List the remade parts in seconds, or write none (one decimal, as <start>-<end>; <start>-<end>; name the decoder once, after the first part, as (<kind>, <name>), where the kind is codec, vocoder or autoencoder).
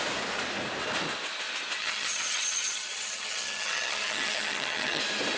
1.8-5.0 (vocoder, HiFi-GAN)